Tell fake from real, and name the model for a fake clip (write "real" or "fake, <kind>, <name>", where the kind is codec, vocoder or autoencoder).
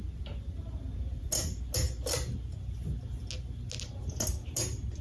real